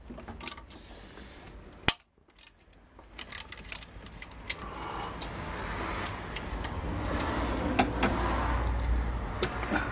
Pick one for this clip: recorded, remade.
recorded